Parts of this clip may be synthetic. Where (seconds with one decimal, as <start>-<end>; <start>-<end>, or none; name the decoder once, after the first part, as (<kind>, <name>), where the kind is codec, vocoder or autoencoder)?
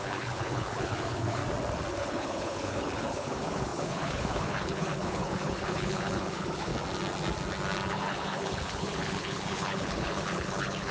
0.0-1.4 (codec, HILCodec); 1.9-6.7; 7.9-10.9